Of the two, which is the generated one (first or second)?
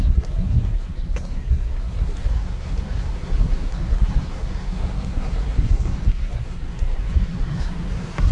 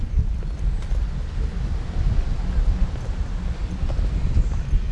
first